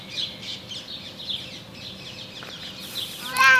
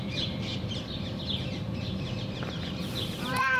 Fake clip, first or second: second